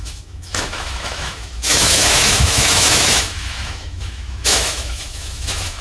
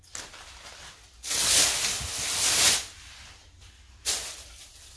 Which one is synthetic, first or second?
first